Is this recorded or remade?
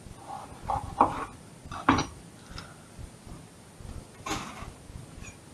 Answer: recorded